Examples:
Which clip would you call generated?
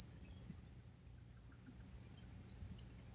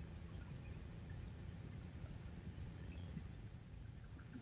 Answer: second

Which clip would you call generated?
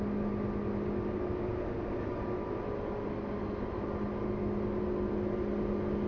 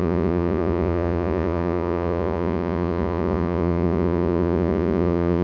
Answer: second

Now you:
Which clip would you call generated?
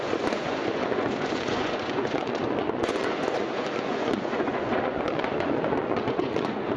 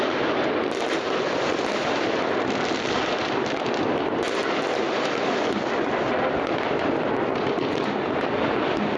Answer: first